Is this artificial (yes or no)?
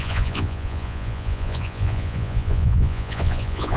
yes